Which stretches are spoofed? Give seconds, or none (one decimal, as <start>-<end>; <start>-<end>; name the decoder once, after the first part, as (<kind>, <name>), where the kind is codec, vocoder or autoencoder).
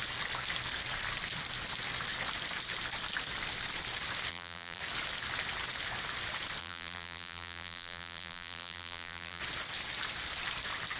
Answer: 4.3-4.8 (vocoder, BigVGAN v2); 6.6-9.4